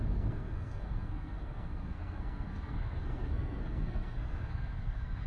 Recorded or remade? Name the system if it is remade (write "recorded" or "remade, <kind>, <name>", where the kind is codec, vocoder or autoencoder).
remade, codec, SNAC